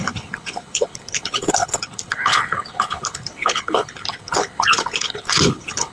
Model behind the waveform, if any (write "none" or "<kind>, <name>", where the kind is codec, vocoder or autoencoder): codec, HILCodec